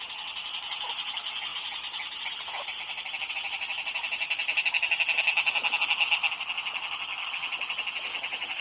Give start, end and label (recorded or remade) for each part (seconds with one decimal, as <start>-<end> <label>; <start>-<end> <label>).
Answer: 0.0-8.6 recorded